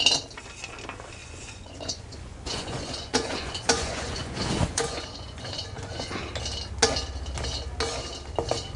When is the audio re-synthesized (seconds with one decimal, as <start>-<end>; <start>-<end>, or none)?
1.2-6.2